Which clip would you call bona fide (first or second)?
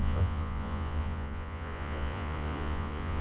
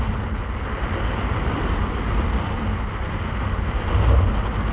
second